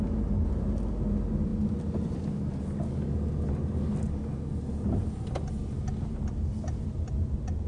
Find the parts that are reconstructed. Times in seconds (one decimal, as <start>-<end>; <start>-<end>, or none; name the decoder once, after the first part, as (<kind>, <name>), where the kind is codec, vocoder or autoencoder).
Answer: none